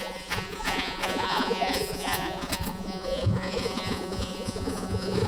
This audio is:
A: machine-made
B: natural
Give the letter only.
A